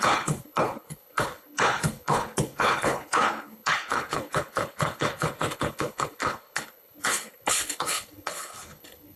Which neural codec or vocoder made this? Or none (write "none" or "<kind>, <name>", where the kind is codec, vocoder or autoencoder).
codec, HILCodec